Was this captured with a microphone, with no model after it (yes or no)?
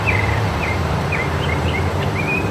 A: no